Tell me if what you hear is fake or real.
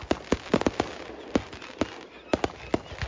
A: real